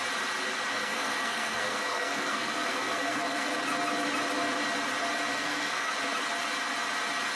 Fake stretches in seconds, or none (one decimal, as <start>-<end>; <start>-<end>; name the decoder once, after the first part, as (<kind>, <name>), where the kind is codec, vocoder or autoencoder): 0.8-3.5 (codec, SNAC); 5.3-5.9